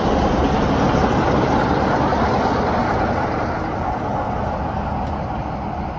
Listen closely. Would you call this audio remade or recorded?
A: recorded